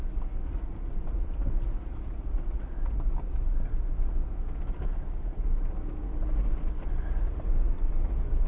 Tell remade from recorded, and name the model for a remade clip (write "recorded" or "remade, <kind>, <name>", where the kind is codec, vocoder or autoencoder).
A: recorded